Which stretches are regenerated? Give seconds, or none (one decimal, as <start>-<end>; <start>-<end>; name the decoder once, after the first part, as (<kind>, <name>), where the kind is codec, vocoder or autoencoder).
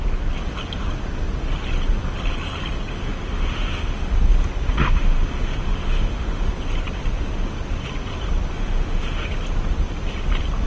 2.9-4.2 (autoencoder, DAC-VAE); 4.8-6.5; 8.5-9.3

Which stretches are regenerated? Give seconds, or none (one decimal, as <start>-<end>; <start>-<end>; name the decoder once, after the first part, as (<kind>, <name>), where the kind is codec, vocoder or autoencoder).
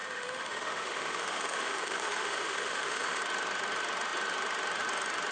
0.0-3.2 (autoencoder, DAC-VAE)